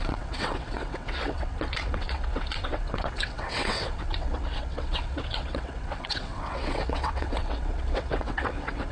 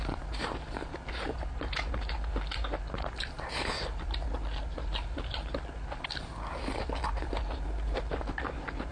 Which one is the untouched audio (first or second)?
second